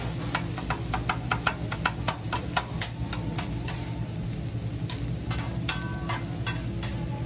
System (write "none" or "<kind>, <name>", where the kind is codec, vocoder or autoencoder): none